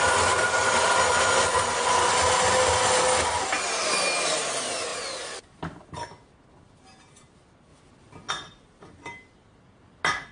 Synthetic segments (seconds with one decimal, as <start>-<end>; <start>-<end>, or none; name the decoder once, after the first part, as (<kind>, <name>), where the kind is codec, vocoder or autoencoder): none